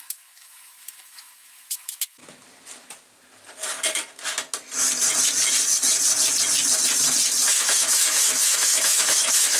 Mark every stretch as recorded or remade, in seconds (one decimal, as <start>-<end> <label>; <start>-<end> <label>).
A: 0.0-2.2 remade; 2.2-7.5 recorded; 7.5-9.6 remade